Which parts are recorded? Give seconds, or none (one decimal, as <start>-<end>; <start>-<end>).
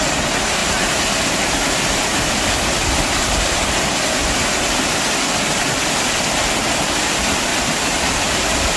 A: 0.0-0.6; 2.3-7.5